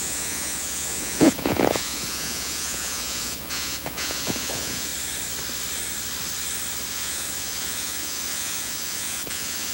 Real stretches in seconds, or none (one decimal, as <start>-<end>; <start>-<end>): 4.9-6.9